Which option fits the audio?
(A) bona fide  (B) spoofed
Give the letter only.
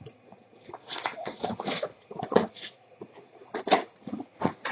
B